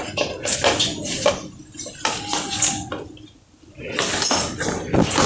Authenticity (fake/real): real